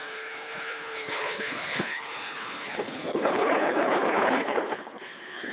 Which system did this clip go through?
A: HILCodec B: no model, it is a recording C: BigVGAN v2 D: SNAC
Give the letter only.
A